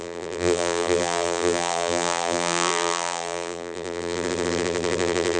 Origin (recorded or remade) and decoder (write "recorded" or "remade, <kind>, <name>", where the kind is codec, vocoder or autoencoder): remade, vocoder, BigVGAN v2